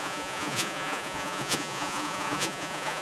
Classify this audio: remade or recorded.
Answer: remade